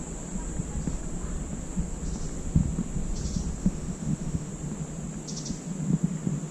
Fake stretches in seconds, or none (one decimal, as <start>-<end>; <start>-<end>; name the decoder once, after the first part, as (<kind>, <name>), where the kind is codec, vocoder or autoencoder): 3.6-4.5 (autoencoder, DAC-VAE)